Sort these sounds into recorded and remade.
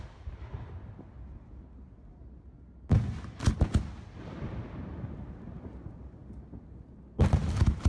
recorded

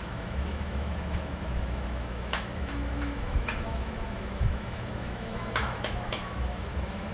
remade